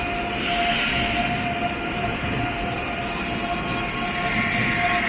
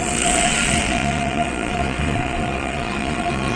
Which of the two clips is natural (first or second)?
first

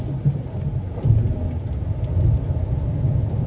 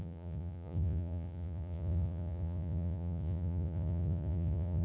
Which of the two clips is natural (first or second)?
first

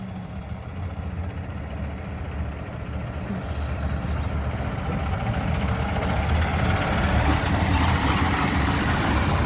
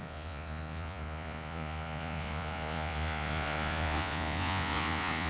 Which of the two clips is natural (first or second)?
first